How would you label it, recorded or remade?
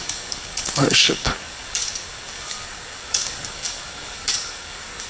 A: remade